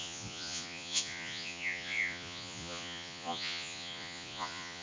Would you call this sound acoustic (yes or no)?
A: no